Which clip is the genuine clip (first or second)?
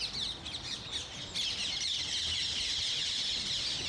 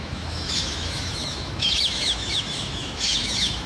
first